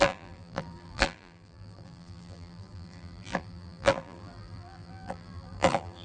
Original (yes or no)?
no